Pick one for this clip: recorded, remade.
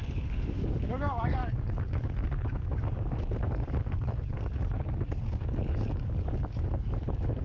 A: remade